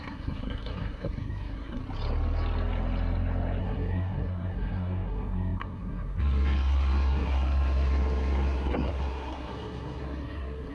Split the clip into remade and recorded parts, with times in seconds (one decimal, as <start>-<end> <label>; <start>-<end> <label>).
0.0-1.8 remade; 1.8-3.6 recorded; 3.6-10.7 remade